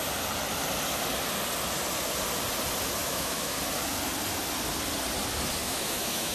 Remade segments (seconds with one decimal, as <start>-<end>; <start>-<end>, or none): 3.0-3.6; 5.6-6.3